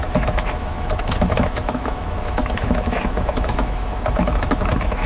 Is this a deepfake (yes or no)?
yes